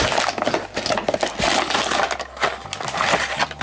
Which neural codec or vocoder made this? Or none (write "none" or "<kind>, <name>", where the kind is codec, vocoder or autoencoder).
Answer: none